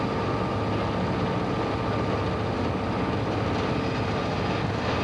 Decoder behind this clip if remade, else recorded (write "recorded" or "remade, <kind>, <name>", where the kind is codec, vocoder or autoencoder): recorded